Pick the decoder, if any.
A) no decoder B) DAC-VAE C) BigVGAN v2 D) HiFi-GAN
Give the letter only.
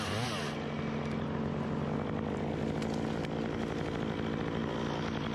A